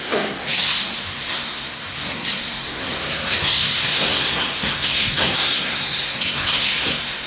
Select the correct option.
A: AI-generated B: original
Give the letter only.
A